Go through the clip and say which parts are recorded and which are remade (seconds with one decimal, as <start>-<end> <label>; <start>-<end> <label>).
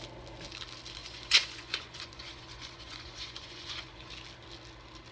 0.0-1.0 recorded; 1.0-4.1 remade; 4.1-5.1 recorded